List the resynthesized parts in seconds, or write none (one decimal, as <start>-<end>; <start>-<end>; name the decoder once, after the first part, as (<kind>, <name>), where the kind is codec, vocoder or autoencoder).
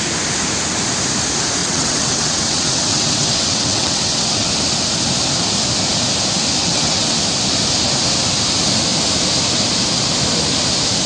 1.6-4.5 (vocoder, WaveNeXt); 6.6-7.2